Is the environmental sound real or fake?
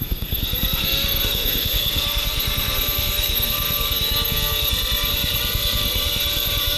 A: fake